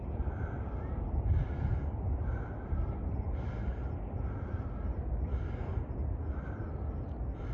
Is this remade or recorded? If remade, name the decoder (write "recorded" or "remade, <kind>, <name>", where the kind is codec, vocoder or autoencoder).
recorded